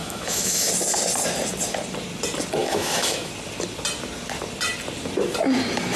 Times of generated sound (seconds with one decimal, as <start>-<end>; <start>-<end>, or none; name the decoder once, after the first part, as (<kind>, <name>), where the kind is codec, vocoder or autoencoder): 0.0-0.7 (autoencoder, DAC-VAE); 2.6-3.3